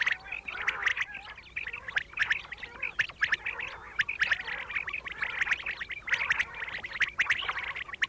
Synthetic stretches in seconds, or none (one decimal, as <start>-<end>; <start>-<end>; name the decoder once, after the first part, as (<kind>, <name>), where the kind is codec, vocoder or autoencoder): none